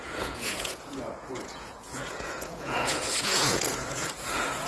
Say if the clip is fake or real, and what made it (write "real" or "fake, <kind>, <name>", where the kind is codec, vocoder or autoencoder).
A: fake, vocoder, Vocos